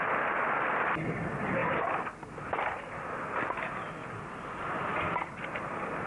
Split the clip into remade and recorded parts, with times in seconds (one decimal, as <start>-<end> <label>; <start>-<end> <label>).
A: 0.0-6.1 recorded